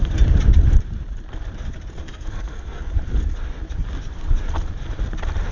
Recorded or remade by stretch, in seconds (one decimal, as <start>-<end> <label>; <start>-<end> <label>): 0.0-2.0 recorded; 2.0-2.9 remade; 2.9-5.5 recorded